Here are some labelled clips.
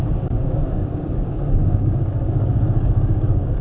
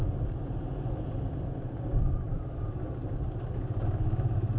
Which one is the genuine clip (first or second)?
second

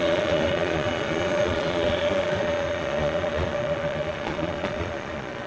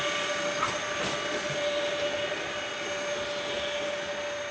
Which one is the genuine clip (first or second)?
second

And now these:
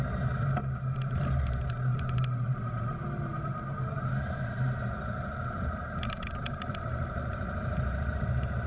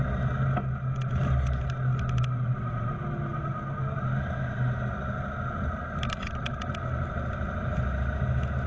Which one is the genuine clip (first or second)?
second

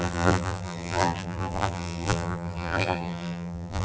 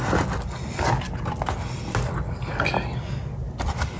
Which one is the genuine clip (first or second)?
second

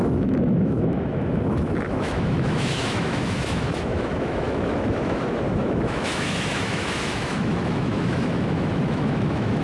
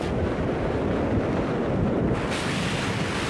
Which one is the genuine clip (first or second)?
second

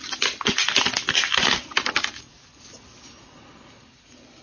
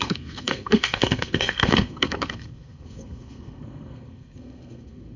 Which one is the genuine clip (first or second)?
first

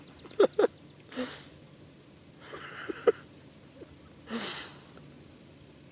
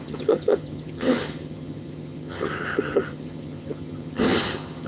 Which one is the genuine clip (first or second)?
first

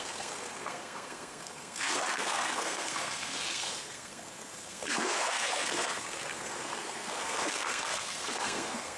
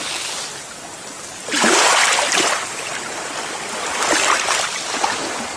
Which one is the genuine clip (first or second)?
second